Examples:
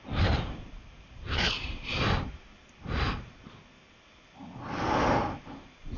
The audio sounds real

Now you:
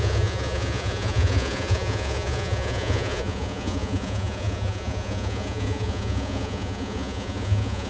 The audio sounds fake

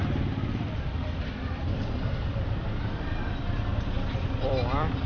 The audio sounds fake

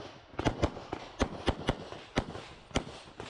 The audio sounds real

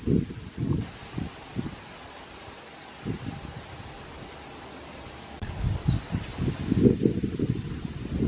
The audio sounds real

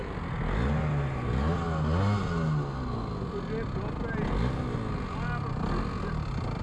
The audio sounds real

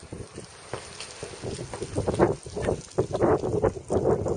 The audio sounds real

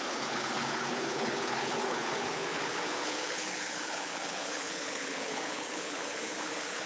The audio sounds fake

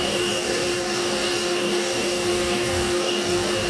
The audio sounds fake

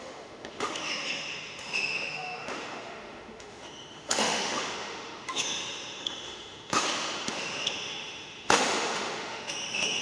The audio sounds fake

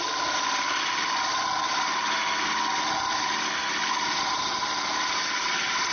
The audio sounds real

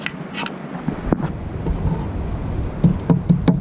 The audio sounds real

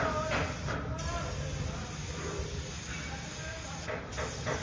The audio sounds real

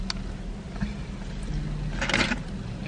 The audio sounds real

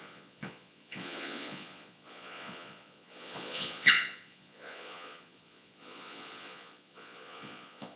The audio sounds fake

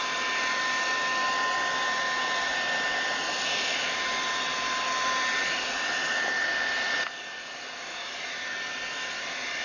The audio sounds real